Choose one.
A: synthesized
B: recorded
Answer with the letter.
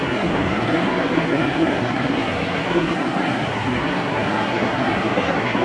A